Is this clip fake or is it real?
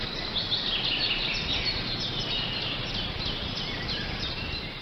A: real